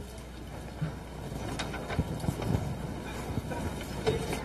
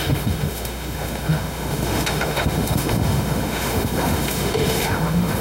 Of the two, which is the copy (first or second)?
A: second